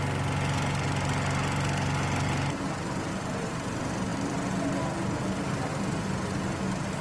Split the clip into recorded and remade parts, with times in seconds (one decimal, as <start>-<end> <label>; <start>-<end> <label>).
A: 0.0-7.0 recorded